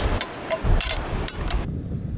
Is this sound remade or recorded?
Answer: remade